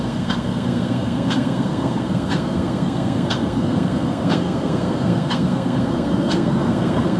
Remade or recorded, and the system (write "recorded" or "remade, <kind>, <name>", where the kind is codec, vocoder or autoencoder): remade, codec, SNAC